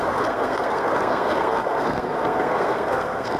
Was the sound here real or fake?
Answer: fake